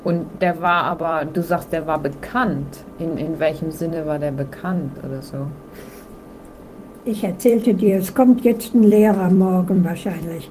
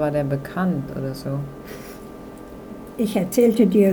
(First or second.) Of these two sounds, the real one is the second